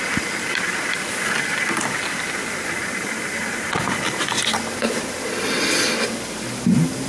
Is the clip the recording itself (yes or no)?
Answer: yes